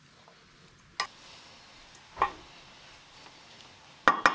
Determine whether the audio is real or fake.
real